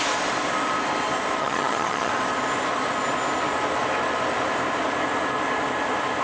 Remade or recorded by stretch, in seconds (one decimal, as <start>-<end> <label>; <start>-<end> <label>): 0.0-1.4 recorded; 1.4-2.1 remade; 2.1-6.2 recorded